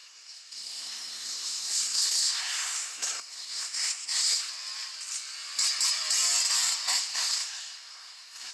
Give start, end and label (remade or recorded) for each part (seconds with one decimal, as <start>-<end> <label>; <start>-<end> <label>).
0.0-4.5 remade; 4.5-7.1 recorded; 7.1-8.5 remade